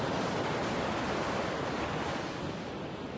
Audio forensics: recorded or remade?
recorded